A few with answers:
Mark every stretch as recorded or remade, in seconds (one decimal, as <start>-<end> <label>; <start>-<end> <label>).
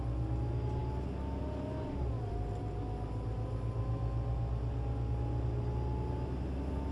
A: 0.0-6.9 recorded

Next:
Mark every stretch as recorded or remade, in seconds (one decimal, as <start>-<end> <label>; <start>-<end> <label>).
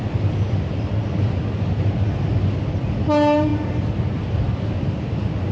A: 0.0-5.5 recorded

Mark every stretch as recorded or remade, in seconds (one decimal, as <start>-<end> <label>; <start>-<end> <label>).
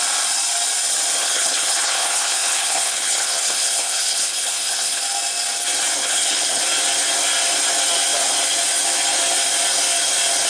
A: 0.0-1.2 recorded; 1.2-5.0 remade; 5.0-6.0 recorded; 6.0-6.6 remade; 6.6-10.5 recorded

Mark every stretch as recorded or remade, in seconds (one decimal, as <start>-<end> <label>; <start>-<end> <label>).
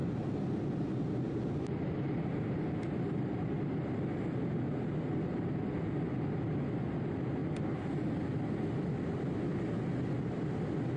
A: 0.0-11.0 recorded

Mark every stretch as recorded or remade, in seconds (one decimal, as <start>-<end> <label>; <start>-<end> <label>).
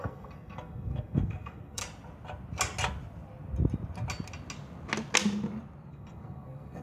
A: 0.0-1.8 remade; 1.8-5.9 recorded; 5.9-6.8 remade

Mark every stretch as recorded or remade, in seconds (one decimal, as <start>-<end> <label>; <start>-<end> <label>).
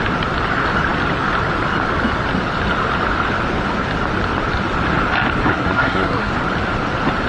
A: 0.0-5.5 recorded; 5.5-6.3 remade; 6.3-7.3 recorded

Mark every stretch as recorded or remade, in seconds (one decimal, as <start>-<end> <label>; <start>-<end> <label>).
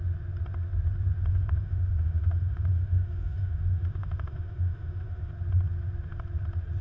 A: 0.0-1.3 recorded; 1.3-5.3 remade; 5.3-6.8 recorded